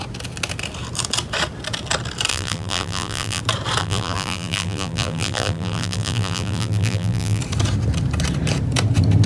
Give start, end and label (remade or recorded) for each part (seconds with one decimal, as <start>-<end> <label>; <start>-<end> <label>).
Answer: 0.0-2.3 recorded; 2.3-3.4 remade; 3.4-3.8 recorded; 3.8-7.4 remade; 7.4-9.3 recorded